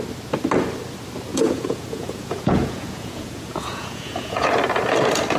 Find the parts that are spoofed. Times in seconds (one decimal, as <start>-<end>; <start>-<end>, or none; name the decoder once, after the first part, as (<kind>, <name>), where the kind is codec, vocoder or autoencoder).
1.3-4.5 (vocoder, Vocos)